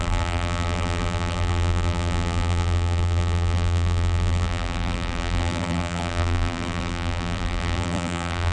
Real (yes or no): no